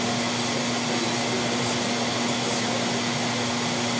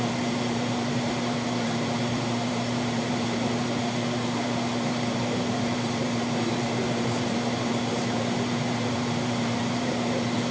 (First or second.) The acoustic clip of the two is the first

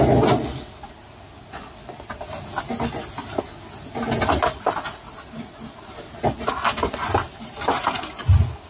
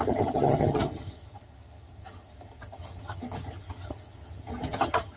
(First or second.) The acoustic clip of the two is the first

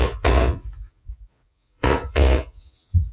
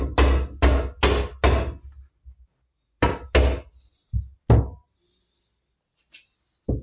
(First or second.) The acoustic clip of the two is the second